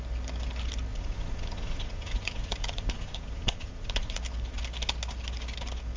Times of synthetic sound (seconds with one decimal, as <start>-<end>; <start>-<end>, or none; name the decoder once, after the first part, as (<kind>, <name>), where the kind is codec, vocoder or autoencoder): 0.9-4.2 (vocoder, Vocos)